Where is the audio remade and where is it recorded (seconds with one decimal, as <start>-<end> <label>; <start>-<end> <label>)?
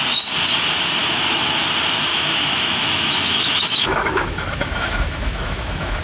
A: 0.0-1.0 recorded; 1.0-1.6 remade; 1.6-2.1 recorded; 2.1-6.0 remade